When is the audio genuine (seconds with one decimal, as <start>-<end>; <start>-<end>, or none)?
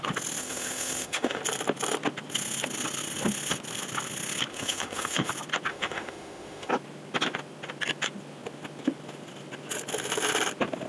0.0-0.4; 1.4-4.5; 5.3-5.7; 6.7-10.9